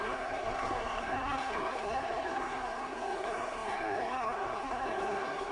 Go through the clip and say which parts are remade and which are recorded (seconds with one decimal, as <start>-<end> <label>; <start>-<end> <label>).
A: 0.0-5.5 remade